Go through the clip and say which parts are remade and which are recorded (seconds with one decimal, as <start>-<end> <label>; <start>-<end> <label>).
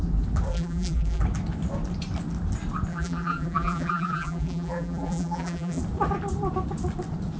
0.0-0.5 recorded; 0.5-1.2 remade; 1.2-2.9 recorded; 2.9-5.8 remade; 5.8-7.4 recorded